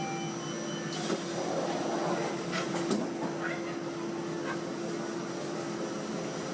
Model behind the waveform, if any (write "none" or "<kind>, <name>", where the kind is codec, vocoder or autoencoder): none